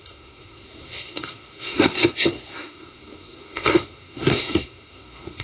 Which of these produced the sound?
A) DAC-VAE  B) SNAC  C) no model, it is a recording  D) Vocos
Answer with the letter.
B